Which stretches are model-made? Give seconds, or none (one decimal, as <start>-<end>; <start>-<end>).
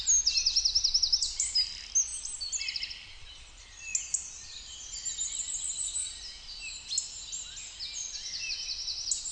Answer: none